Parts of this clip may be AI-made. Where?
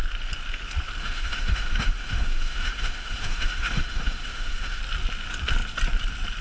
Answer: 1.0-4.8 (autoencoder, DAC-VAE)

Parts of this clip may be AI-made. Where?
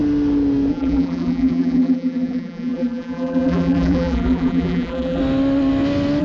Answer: 0.7-5.2 (vocoder, BigVGAN v2)